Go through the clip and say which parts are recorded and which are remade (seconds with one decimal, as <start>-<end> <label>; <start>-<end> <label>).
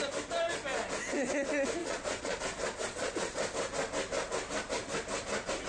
0.0-1.8 recorded; 1.8-2.4 remade; 2.4-2.8 recorded; 2.8-3.4 remade; 3.4-5.7 recorded